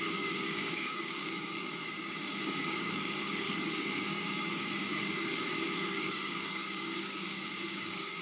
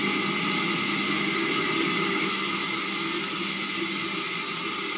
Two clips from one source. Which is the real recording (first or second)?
second